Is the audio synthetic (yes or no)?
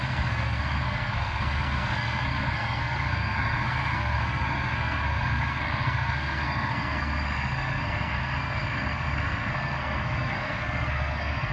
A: yes